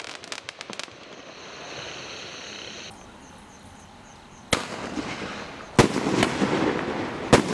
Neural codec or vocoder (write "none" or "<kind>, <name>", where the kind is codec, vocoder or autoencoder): none